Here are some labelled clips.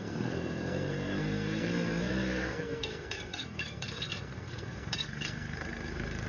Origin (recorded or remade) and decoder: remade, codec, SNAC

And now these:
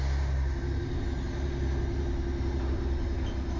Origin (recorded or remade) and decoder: recorded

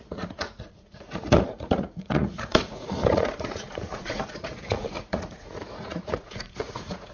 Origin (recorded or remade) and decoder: remade, vocoder, Vocos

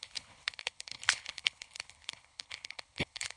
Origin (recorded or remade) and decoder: remade, codec, HILCodec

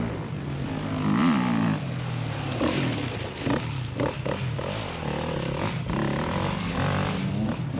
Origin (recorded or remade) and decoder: recorded